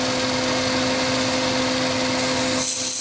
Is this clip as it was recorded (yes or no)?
yes